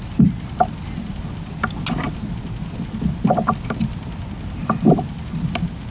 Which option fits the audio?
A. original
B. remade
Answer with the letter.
A